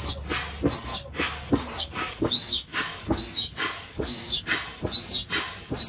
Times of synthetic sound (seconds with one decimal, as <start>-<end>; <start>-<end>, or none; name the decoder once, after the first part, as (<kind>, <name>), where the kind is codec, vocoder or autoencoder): 0.9-4.4 (codec, DAC)